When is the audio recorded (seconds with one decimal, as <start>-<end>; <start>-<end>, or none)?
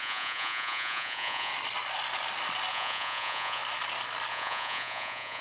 1.5-2.7; 3.6-4.3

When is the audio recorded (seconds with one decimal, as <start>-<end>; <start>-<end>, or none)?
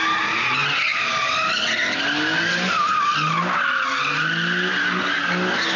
0.0-5.8